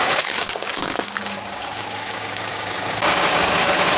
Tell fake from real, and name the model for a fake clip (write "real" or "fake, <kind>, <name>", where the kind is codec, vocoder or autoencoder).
fake, codec, DAC